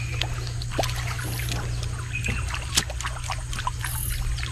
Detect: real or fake real